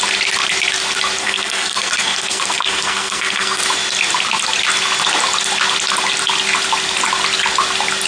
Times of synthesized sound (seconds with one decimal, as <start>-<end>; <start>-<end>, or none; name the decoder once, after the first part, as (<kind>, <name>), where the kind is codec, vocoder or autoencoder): 1.2-3.6 (codec, SNAC)